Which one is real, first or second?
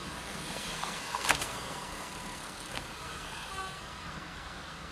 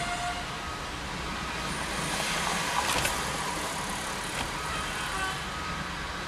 second